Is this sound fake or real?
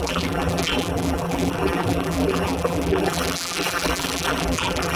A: fake